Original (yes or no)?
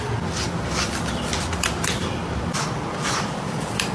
yes